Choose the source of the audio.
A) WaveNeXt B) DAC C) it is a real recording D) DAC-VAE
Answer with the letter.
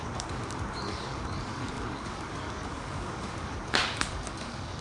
B